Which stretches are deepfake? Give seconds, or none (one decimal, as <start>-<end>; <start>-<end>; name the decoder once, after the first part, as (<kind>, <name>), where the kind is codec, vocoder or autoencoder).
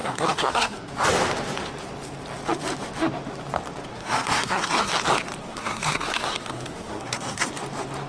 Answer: 0.0-0.9 (codec, SNAC); 3.9-4.9; 5.4-7.5